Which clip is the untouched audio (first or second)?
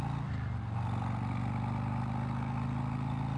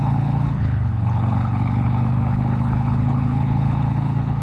first